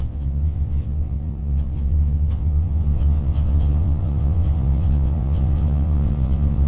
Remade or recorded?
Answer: remade